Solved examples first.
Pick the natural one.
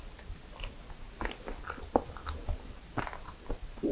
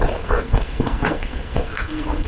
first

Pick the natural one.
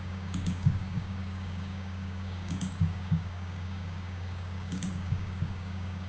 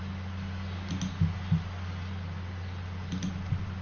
second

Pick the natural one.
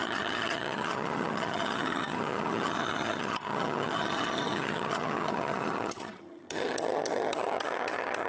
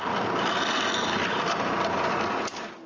second